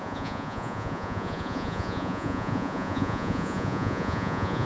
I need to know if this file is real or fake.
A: fake